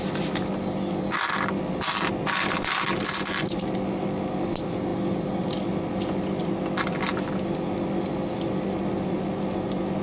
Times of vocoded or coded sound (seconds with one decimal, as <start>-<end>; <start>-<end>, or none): none